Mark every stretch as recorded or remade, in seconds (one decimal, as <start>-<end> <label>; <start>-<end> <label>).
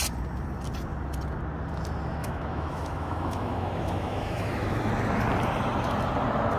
0.0-2.2 recorded; 2.2-4.9 remade; 4.9-6.6 recorded